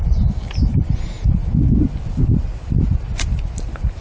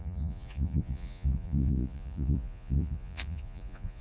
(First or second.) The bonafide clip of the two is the first